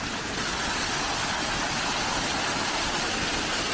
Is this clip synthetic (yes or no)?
no